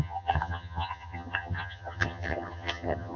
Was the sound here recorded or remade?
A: remade